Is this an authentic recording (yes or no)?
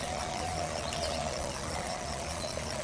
no